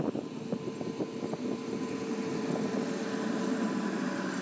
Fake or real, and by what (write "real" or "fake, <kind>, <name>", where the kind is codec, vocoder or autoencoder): real